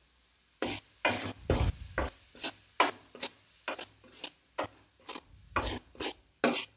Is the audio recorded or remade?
recorded